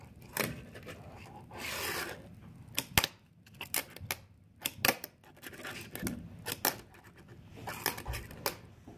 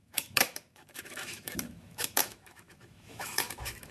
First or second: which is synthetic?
second